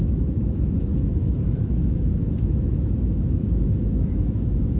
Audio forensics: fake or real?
fake